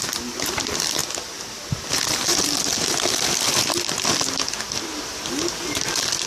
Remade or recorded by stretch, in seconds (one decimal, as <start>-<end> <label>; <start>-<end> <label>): 0.0-1.0 recorded; 1.0-1.9 remade; 1.9-2.7 recorded; 2.7-4.1 remade; 4.1-6.3 recorded